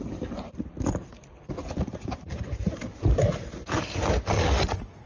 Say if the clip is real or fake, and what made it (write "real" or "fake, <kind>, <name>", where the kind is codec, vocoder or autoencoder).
fake, vocoder, BigVGAN v2